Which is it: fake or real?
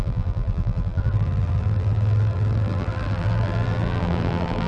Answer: fake